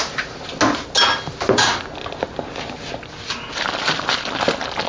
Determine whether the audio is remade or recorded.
recorded